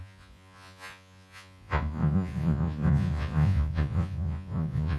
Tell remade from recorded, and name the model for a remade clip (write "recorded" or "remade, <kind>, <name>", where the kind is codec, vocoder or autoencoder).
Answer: remade, vocoder, Vocos